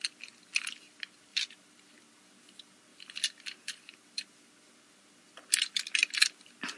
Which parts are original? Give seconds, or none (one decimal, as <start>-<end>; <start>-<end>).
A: 0.0-2.9; 4.3-6.0